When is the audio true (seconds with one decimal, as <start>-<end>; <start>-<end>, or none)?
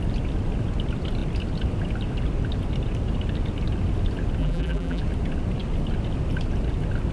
0.0-4.4; 5.0-7.1